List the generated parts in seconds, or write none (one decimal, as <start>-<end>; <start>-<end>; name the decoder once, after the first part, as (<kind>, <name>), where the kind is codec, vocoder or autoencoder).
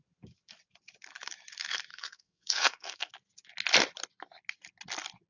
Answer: 1.9-3.1 (codec, SNAC)